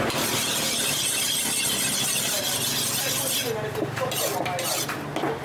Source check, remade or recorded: recorded